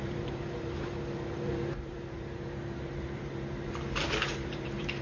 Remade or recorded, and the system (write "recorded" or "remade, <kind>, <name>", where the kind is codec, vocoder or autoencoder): remade, vocoder, BigVGAN v2